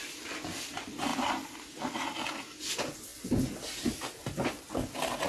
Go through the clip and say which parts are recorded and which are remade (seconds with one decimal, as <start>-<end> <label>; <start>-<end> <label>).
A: 0.0-5.3 recorded